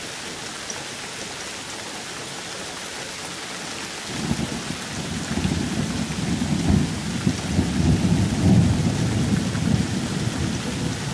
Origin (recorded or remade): recorded